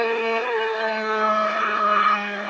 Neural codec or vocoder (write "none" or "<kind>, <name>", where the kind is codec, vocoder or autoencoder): codec, SNAC